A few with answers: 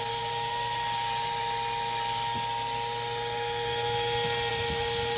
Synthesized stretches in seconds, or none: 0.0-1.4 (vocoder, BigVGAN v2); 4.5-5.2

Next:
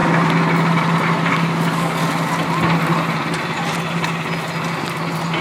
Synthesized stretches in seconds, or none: 1.3-2.0 (codec, DAC)

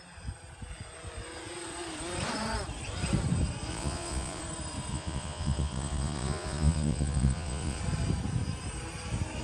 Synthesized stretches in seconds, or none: 3.7-4.4 (vocoder, Vocos); 4.9-7.8

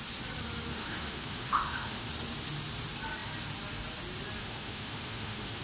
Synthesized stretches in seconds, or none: 0.7-2.1 (autoencoder, DAC-VAE); 4.4-5.6

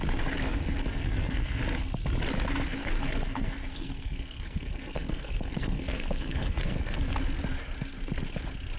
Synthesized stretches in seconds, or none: 0.8-1.6 (codec, SNAC); 2.8-7.0

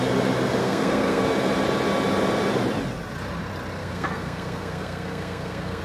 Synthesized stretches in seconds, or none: 0.6-1.2 (codec, SNAC); 3.8-5.8